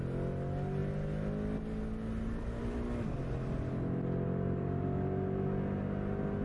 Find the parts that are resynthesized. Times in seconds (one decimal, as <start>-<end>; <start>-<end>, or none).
none